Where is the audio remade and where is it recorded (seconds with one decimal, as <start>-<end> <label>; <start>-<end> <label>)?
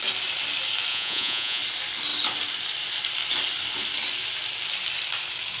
0.0-0.9 recorded; 0.9-1.6 remade; 1.6-5.6 recorded